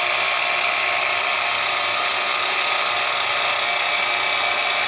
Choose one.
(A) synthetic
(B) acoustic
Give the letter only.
B